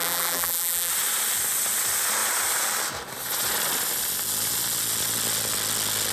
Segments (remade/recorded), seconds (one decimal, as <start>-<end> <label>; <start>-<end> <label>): 0.0-0.9 remade; 0.9-6.1 recorded